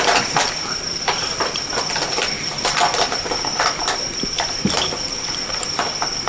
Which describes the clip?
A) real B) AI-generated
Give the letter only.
B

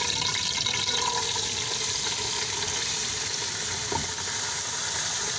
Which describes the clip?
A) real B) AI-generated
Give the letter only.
B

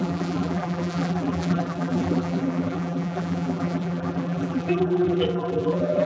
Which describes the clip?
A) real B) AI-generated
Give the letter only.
B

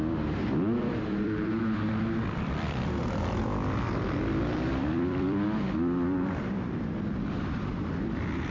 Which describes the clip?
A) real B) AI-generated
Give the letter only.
B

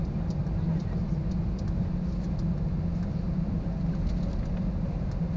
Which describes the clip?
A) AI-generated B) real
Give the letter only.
B